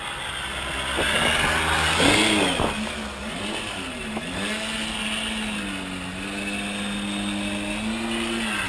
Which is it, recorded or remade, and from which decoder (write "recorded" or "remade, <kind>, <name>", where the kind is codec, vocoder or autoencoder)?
recorded